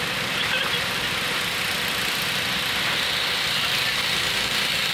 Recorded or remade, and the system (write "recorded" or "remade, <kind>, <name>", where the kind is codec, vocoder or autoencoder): recorded